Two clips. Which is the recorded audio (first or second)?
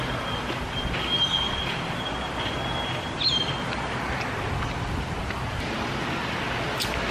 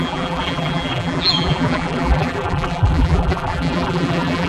first